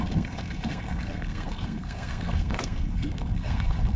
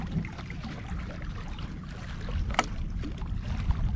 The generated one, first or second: first